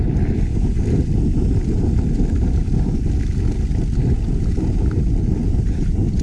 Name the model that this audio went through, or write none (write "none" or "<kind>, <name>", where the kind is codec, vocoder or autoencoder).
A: none